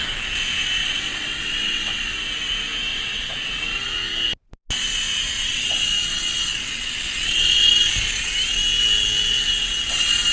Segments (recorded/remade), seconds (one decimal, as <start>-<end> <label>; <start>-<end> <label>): 0.0-0.8 recorded; 0.8-2.0 remade; 2.0-2.9 recorded; 2.9-3.5 remade; 3.5-5.4 recorded; 5.4-7.6 remade; 7.6-10.3 recorded